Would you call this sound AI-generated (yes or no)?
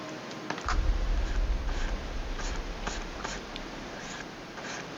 yes